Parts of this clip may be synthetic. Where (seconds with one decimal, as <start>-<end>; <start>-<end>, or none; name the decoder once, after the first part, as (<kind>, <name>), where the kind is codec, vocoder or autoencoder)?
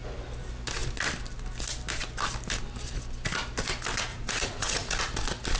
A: 4.1-5.0 (vocoder, Vocos)